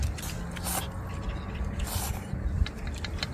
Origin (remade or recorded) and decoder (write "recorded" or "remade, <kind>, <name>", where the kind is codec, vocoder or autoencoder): recorded